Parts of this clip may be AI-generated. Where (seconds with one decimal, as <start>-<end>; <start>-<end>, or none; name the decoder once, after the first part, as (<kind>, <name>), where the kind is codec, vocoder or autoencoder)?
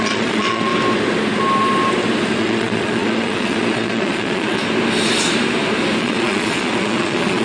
0.0-0.7 (vocoder, Vocos); 2.4-4.6; 6.0-7.4